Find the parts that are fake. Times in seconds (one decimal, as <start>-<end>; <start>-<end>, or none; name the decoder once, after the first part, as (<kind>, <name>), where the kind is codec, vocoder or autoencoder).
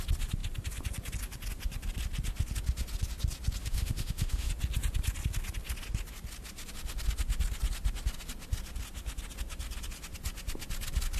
3.6-4.5 (autoencoder, DAC-VAE)